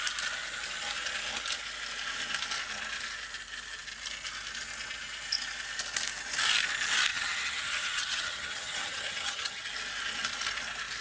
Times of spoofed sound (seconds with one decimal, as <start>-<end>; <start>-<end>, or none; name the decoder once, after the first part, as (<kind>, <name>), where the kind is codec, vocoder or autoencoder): 7.1-9.7 (vocoder, HiFi-GAN)